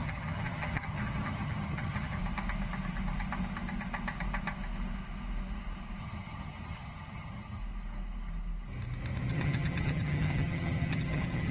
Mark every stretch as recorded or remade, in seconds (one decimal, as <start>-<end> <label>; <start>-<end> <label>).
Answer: 0.0-2.2 remade; 2.2-6.0 recorded; 6.0-7.6 remade; 7.6-9.3 recorded; 9.3-11.5 remade